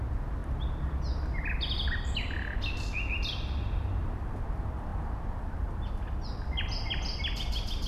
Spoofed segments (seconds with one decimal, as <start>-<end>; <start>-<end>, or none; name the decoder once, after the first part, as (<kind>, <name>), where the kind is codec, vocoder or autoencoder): none